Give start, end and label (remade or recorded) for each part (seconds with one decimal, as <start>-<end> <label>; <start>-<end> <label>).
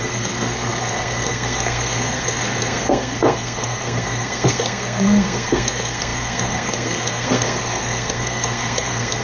0.0-9.2 remade